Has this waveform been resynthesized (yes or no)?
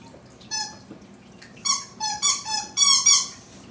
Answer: no